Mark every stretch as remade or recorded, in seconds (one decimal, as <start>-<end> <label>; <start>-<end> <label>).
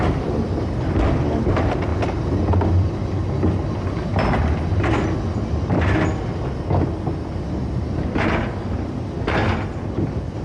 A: 0.0-1.9 remade; 1.9-2.4 recorded; 2.4-4.1 remade; 4.1-7.2 recorded; 7.2-9.4 remade; 9.4-10.4 recorded